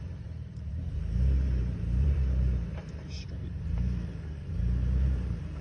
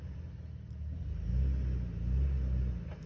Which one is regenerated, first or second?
first